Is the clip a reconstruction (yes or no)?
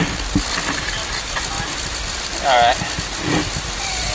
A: no